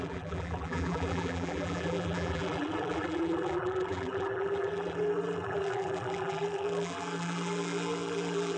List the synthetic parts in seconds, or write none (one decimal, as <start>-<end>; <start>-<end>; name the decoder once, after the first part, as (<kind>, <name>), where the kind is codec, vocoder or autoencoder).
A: 0.0-8.6 (vocoder, BigVGAN v2)